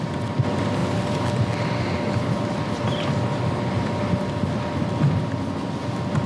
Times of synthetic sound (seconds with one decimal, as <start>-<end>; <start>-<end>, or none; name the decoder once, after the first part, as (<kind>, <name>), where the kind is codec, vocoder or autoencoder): none